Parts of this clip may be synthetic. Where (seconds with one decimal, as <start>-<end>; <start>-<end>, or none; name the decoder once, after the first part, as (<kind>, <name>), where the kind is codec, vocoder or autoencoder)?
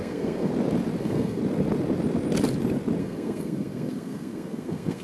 0.0-0.5 (codec, SNAC); 1.0-1.4; 3.0-5.0